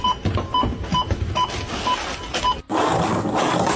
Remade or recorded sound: recorded